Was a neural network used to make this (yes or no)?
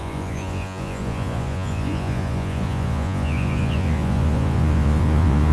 yes